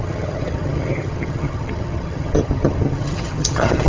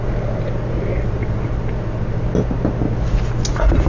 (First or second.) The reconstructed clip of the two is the first